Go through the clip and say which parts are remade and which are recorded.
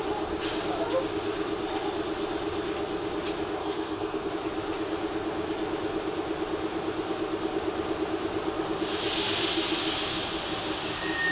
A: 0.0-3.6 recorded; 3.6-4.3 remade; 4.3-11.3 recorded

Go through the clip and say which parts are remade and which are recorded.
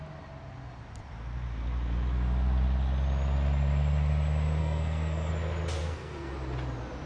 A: 0.0-4.6 recorded; 4.6-5.3 remade; 5.3-5.8 recorded; 5.8-6.3 remade; 6.3-7.1 recorded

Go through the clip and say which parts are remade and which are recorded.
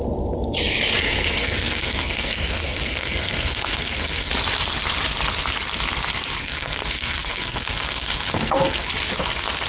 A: 0.0-1.0 recorded; 1.0-4.3 remade; 4.3-6.4 recorded; 6.4-8.9 remade; 8.9-9.7 recorded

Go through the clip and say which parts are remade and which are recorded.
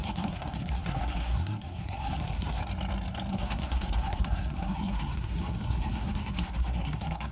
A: 0.0-2.6 remade; 2.6-3.3 recorded; 3.3-7.3 remade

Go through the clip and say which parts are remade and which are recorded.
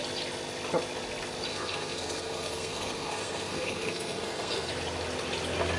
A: 0.0-1.5 recorded; 1.5-4.7 remade; 4.7-5.8 recorded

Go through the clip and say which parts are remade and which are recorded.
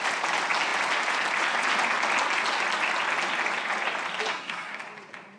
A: 0.0-4.3 recorded; 4.3-4.8 remade; 4.8-5.4 recorded